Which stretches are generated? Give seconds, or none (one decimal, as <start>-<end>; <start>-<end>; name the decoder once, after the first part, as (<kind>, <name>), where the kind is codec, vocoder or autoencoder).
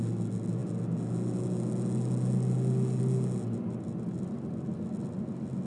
none